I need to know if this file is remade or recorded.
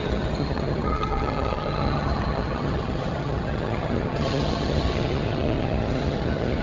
remade